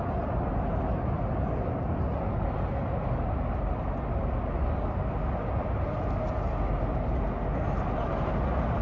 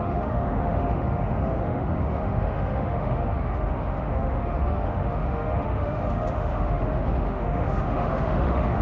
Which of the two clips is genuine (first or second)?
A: first